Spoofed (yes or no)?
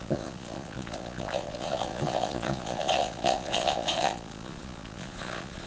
yes